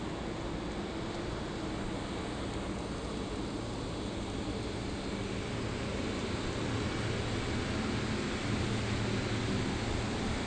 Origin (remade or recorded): recorded